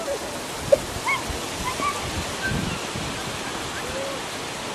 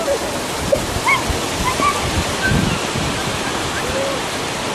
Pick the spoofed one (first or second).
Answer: second